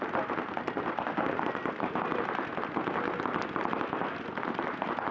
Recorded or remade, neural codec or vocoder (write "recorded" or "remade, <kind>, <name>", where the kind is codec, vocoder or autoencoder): recorded